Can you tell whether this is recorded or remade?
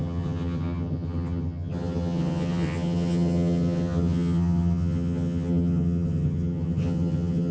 remade